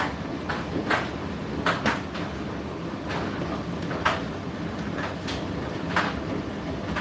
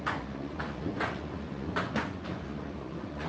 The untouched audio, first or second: first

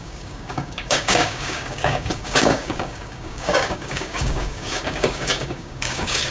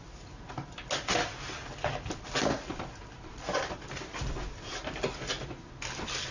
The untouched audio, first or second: second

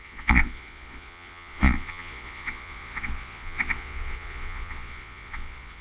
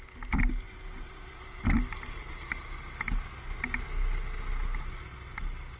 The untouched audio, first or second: second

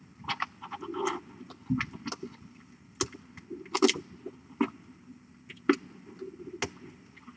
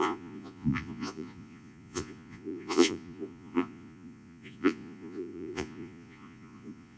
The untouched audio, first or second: first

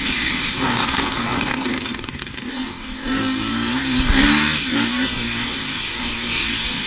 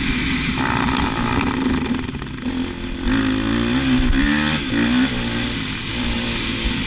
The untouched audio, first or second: second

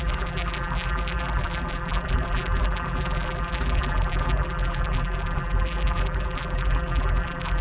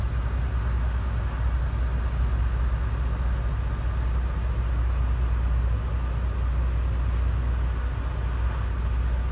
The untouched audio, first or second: second